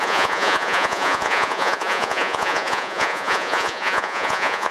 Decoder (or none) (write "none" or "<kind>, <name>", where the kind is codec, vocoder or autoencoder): vocoder, Vocos